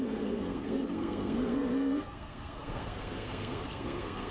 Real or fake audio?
fake